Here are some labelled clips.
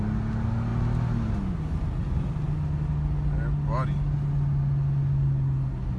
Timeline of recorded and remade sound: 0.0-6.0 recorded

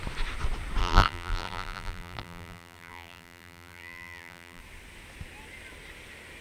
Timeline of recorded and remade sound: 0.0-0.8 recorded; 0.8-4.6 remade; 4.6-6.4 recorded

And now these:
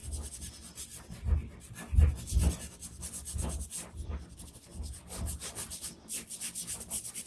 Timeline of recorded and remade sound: 0.0-4.7 recorded; 4.7-6.3 remade; 6.3-7.3 recorded

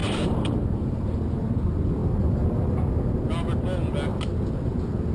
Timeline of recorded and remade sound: 0.0-1.0 remade; 1.0-5.1 recorded

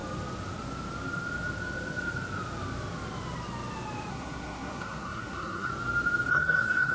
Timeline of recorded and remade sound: 0.0-4.1 recorded; 4.1-5.7 remade; 5.7-6.3 recorded; 6.3-6.9 remade